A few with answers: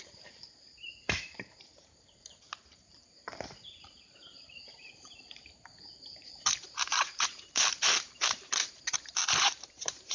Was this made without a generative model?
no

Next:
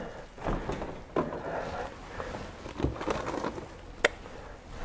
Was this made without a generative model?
yes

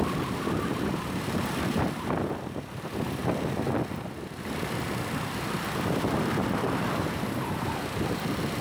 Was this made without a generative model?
no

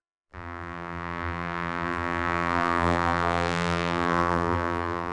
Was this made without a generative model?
no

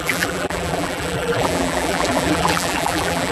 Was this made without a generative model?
no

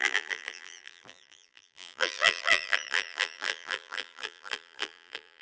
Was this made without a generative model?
no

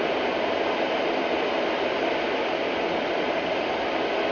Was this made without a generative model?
no